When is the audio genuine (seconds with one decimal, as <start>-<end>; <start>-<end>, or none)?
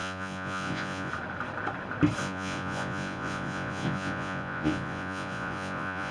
1.1-2.2